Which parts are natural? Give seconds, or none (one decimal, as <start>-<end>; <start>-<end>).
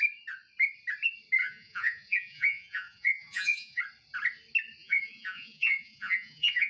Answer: 0.0-1.4; 3.8-4.8